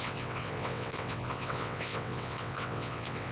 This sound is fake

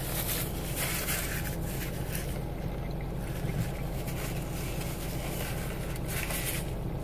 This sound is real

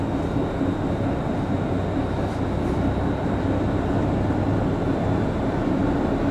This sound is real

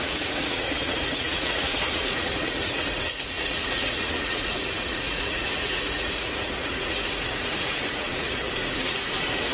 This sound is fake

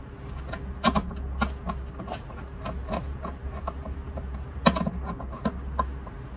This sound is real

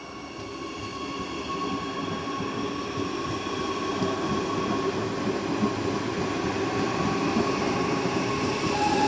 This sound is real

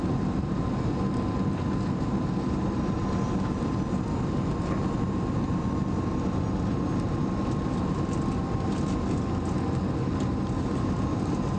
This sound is real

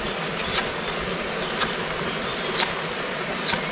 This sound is real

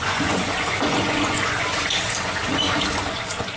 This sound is fake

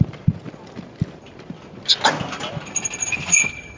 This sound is real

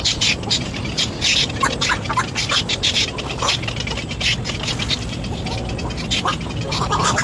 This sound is real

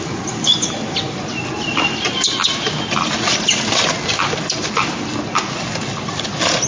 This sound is real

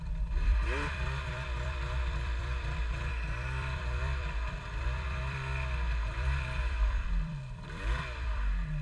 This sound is fake